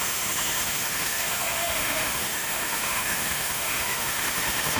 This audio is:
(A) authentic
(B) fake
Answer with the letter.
B